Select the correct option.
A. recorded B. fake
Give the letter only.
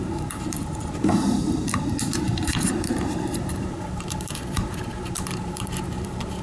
B